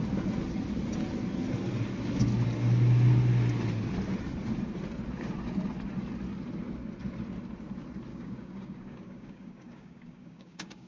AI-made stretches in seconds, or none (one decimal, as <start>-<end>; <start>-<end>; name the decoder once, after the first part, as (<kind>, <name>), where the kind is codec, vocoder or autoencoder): 8.1-10.9 (codec, DAC)